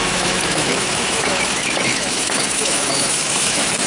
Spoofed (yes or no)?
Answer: yes